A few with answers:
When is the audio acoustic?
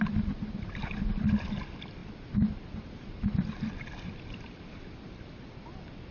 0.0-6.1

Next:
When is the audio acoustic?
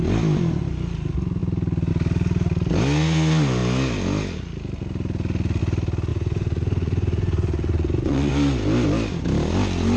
0.0-6.1; 8.3-10.0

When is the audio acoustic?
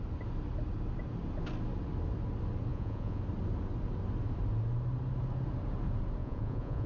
0.0-2.7; 3.2-6.2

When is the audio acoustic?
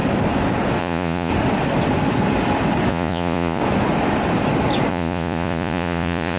0.0-0.8; 1.3-2.9; 3.6-4.9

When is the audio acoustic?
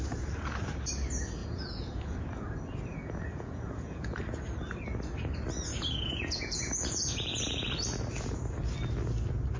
0.0-1.4; 2.2-2.9; 4.2-5.7; 7.7-9.6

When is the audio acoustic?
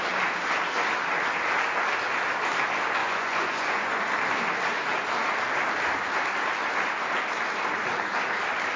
0.0-3.0; 4.0-8.8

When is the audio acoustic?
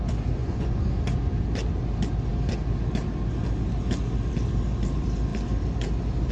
0.0-0.4; 0.9-6.3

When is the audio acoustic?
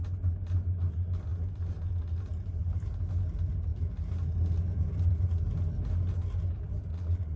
0.0-6.9